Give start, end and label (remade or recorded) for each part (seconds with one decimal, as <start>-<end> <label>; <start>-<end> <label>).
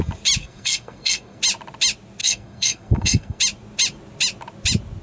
0.0-0.4 recorded; 0.4-1.4 remade; 1.4-2.2 recorded; 2.2-3.4 remade; 3.4-5.0 recorded